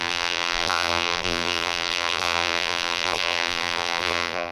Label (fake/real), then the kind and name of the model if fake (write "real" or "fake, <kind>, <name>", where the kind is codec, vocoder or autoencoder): fake, vocoder, BigVGAN v2